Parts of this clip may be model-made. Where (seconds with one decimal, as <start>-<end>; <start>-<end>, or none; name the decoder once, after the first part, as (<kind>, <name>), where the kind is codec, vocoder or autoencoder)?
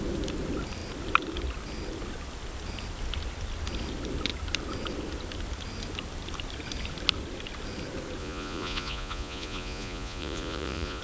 8.2-11.0 (vocoder, Vocos)